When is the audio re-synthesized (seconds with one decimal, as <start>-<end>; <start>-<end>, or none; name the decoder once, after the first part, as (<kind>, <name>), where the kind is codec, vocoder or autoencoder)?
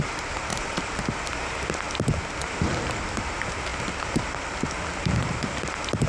0.0-0.5 (vocoder, BigVGAN v2); 2.4-3.7; 5.0-6.1